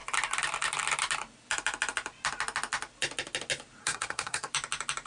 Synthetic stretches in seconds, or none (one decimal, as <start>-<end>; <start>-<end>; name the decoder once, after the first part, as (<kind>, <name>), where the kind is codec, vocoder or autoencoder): 3.8-4.5 (codec, SNAC)